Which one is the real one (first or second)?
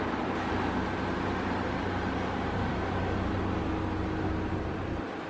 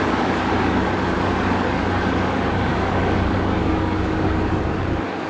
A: first